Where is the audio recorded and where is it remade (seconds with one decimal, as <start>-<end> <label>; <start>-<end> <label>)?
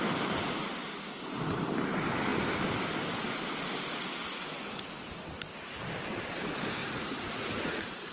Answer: 0.0-6.8 recorded; 6.8-8.1 remade